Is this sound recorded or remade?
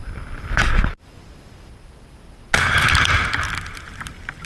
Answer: recorded